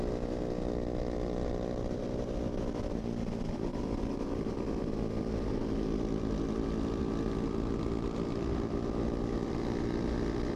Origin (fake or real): real